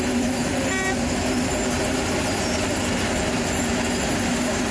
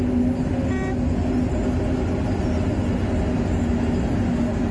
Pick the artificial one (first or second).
first